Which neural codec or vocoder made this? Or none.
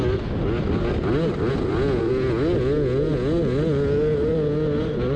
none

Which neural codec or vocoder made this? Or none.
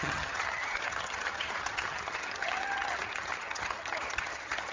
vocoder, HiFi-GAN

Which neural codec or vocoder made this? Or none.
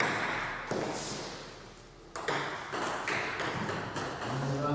none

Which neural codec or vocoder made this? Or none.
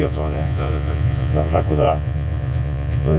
vocoder, Vocos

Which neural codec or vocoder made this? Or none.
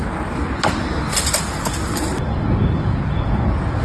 none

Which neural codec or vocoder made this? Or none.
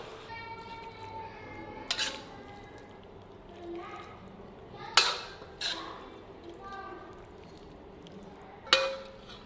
none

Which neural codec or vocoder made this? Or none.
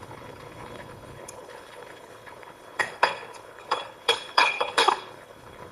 codec, HILCodec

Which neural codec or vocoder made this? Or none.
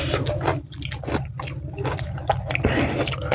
none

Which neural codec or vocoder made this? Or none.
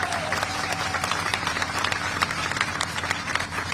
vocoder, BigVGAN v2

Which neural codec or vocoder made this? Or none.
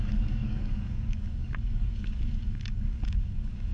codec, DAC